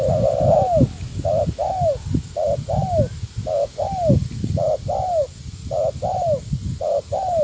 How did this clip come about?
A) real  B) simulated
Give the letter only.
A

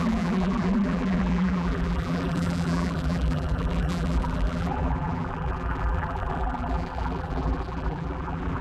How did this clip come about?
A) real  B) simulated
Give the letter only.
B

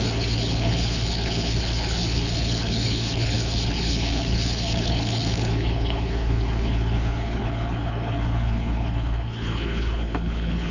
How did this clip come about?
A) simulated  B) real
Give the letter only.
A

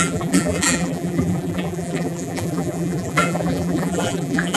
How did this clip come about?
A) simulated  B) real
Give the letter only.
A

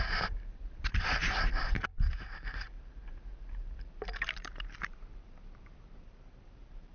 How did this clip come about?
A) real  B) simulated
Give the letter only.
B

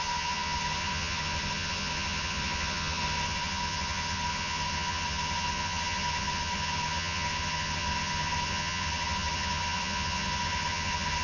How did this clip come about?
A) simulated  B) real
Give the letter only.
A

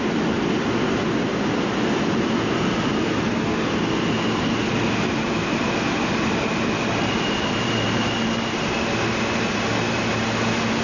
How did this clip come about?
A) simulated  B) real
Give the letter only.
B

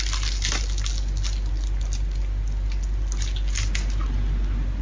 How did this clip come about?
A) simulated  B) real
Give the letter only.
B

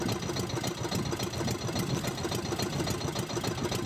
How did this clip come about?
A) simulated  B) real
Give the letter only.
B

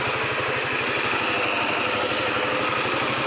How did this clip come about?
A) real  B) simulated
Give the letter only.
A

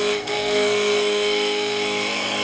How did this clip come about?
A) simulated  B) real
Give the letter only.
A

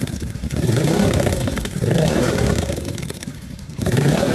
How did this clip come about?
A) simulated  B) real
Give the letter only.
A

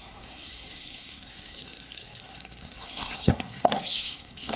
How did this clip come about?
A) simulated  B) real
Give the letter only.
A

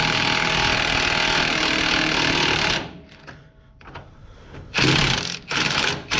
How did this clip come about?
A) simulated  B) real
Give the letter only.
B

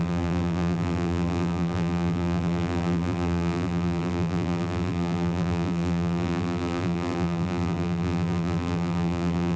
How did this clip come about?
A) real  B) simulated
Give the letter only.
B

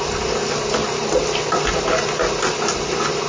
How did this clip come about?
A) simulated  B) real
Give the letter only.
B